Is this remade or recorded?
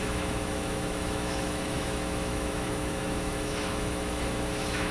remade